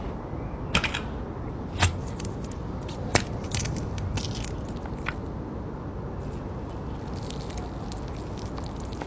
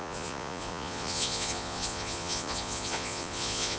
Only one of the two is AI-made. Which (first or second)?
second